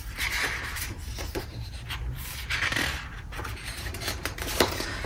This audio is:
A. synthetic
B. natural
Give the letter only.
A